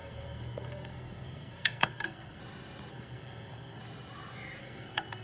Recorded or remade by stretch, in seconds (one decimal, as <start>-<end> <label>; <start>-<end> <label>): 0.0-2.4 remade; 2.4-2.9 recorded; 2.9-3.8 remade; 3.8-4.6 recorded; 4.6-5.2 remade